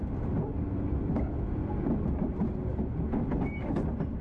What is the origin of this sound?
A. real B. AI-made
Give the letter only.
A